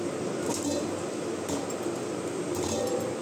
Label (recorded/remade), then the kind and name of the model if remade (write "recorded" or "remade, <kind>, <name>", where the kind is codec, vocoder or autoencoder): recorded